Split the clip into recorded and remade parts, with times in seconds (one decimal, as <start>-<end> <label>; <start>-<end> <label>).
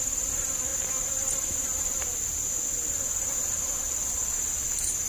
0.0-5.1 recorded